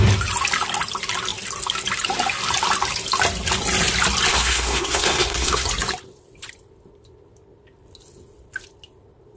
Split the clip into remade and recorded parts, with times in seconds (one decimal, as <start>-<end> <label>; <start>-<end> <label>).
0.0-4.3 recorded; 4.3-5.7 remade; 5.7-9.4 recorded